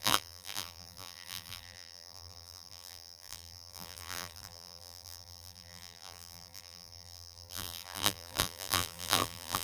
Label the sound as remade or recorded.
remade